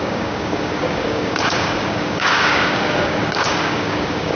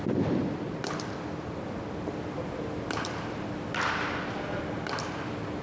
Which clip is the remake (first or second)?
first